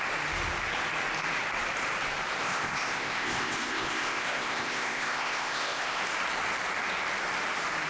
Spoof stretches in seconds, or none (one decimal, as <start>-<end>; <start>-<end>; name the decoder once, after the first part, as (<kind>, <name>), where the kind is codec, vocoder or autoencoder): 2.4-6.0 (codec, ZipCodec)